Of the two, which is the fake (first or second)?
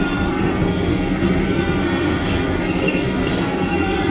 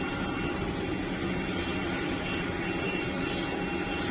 first